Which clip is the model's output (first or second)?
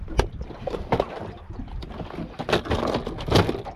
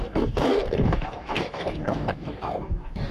second